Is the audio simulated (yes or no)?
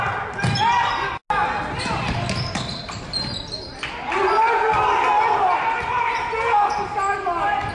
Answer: no